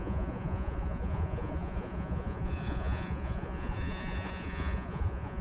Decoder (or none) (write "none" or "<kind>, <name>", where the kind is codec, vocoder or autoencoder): vocoder, Vocos